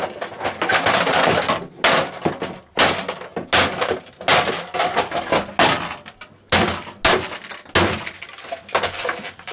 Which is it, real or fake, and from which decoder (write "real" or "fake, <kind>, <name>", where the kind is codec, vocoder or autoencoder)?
real